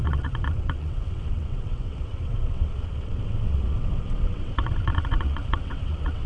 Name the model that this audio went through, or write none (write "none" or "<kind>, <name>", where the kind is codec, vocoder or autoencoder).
vocoder, WaveNeXt